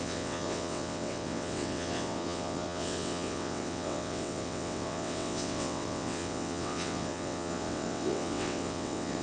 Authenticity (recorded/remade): remade